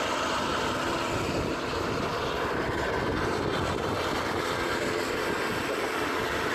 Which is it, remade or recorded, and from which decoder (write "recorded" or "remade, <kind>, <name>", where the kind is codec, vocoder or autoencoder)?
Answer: recorded